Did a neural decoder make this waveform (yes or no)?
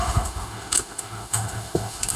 yes